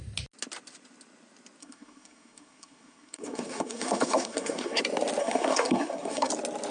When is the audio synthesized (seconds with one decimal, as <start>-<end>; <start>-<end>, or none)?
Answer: 1.6-4.8; 5.2-6.3